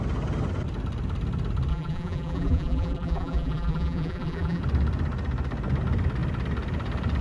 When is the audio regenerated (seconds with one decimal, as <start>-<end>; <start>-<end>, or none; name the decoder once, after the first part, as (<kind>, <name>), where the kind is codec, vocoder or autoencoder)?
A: 1.7-4.6 (vocoder, BigVGAN v2)